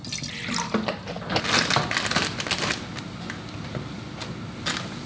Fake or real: real